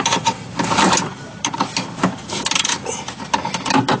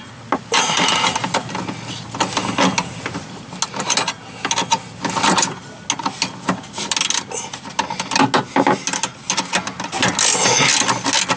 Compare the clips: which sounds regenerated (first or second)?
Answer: first